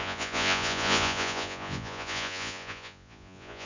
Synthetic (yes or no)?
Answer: yes